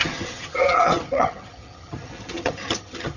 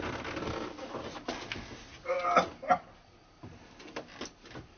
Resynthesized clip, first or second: first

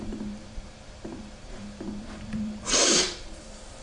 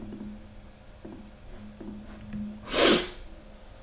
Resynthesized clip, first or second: first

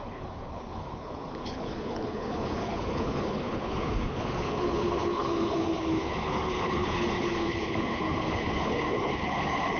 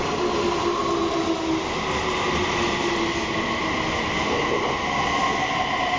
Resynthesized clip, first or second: first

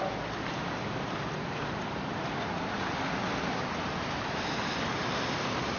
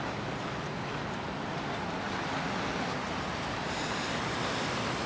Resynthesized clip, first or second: first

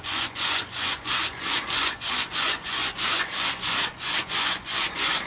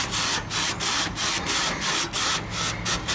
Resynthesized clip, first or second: first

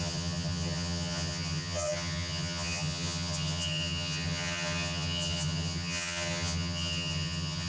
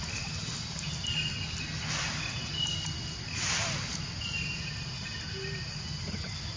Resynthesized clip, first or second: first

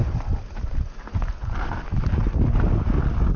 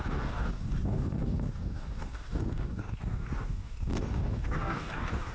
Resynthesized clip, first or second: second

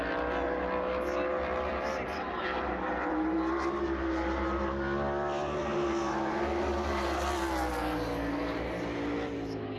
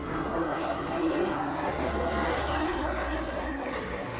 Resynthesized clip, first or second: second